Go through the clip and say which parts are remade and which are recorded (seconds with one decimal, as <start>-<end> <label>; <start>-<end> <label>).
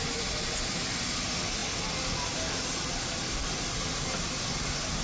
0.0-5.0 recorded